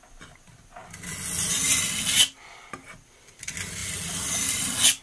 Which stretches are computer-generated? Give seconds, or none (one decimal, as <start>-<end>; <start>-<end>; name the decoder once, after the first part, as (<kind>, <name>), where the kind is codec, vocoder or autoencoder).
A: none